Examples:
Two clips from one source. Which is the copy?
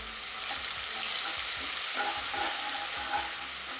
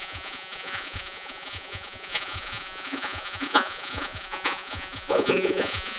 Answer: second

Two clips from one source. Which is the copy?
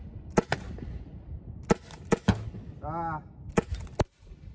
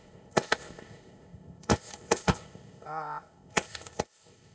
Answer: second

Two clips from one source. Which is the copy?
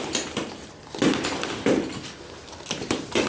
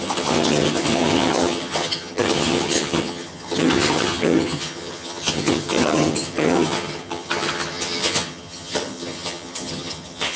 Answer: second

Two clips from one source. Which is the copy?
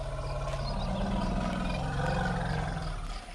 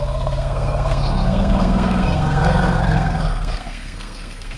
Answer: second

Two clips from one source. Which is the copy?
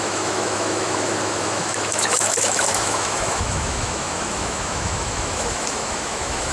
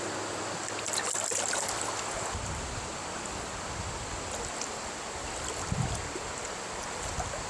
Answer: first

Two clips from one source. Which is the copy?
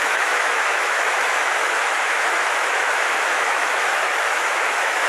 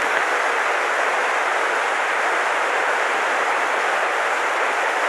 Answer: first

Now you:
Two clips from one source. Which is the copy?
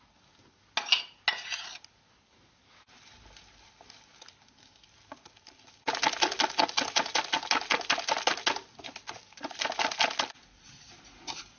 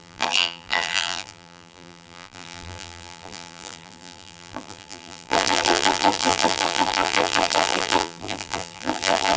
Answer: second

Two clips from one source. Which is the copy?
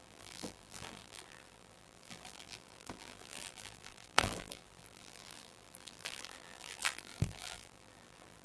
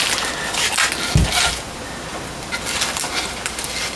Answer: first